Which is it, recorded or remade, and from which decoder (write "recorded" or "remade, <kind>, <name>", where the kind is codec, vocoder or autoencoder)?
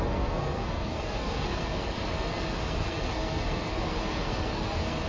remade, codec, SNAC